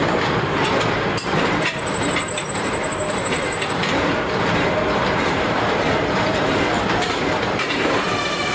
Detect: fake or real fake